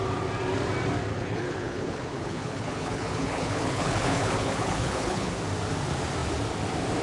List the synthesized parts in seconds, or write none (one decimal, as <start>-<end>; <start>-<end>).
1.1-5.3